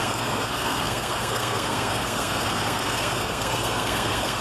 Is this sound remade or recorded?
remade